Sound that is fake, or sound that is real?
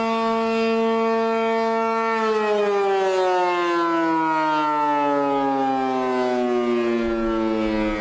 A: real